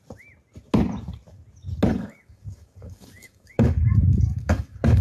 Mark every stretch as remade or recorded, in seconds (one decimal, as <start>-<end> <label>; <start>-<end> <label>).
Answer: 0.0-1.9 recorded; 1.9-5.0 remade

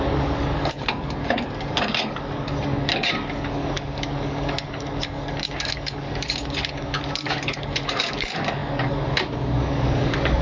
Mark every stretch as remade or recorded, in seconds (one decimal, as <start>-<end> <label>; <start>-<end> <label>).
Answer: 0.0-10.4 remade

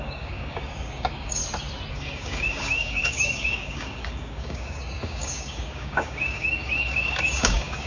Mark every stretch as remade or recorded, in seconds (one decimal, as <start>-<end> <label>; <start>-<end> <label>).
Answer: 0.0-1.4 remade; 1.4-1.9 recorded; 1.9-7.9 remade

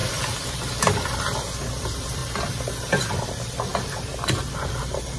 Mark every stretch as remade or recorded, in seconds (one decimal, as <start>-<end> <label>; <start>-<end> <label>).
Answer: 0.0-2.2 remade; 2.2-3.0 recorded; 3.0-3.7 remade; 3.7-4.8 recorded; 4.8-5.2 remade

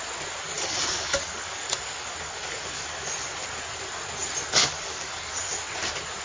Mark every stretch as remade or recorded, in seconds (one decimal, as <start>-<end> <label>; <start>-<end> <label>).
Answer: 0.0-0.5 recorded; 0.5-3.1 remade; 3.1-4.6 recorded; 4.6-5.3 remade; 5.3-6.2 recorded

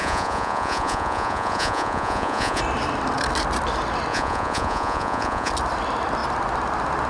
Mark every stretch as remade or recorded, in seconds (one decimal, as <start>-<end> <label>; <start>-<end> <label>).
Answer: 0.0-2.6 remade; 2.6-4.1 recorded; 4.1-5.5 remade; 5.5-7.1 recorded

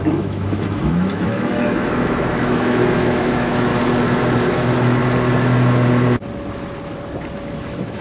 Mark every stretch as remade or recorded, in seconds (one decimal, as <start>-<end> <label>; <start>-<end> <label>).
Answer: 0.0-3.7 remade; 3.7-4.5 recorded; 4.5-5.0 remade; 5.0-7.5 recorded; 7.5-8.0 remade